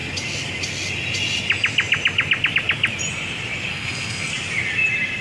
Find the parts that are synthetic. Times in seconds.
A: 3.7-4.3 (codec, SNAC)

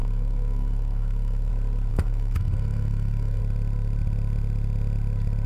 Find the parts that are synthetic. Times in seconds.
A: 0.0-1.5 (codec, SNAC); 1.9-3.4

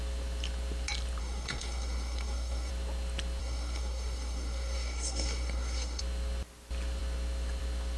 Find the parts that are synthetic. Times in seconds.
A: 1.2-2.7 (codec, SNAC); 3.4-6.0

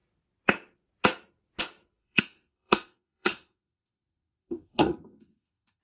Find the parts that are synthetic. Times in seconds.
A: 2.0-5.8 (codec, SNAC)

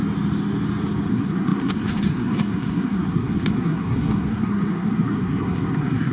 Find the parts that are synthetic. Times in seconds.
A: 1.1-6.1 (codec, SNAC)

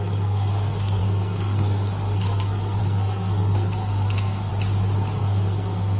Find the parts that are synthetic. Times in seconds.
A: 0.0-4.5 (codec, SNAC); 5.2-6.0

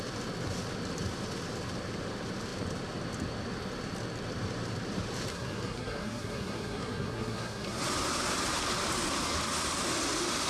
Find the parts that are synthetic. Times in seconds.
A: 5.3-7.8 (codec, SNAC)